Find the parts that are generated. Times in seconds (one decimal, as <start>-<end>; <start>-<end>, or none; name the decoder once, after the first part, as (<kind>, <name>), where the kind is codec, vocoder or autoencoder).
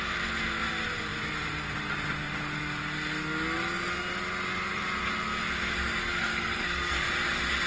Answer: 6.0-7.1 (codec, SNAC)